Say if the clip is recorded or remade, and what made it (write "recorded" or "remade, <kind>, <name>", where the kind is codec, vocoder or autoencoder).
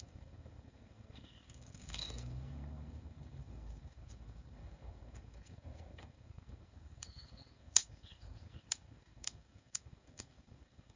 remade, codec, SNAC